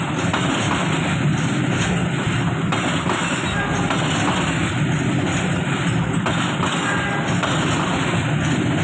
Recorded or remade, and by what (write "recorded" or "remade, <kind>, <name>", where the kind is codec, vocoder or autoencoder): recorded